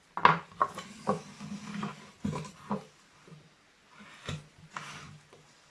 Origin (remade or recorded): recorded